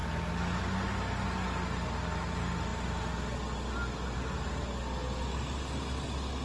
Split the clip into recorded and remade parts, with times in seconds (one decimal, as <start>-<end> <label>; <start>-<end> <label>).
0.0-6.4 recorded